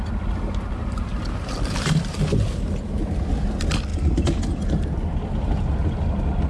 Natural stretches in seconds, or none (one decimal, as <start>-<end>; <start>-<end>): 0.0-0.8; 2.2-6.5